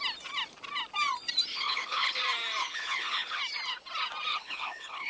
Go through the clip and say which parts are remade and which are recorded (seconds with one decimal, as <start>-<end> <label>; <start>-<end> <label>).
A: 0.0-1.5 recorded; 1.5-2.2 remade; 2.2-2.6 recorded; 2.6-3.4 remade; 3.4-4.3 recorded; 4.3-5.1 remade